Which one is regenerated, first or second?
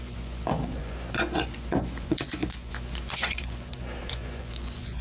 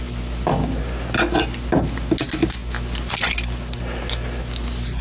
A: first